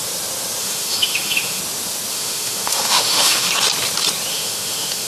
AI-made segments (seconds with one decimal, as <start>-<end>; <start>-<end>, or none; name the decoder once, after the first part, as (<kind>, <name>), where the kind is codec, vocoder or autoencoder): 0.6-1.6 (autoencoder, DAC-VAE); 2.1-3.5; 4.3-5.1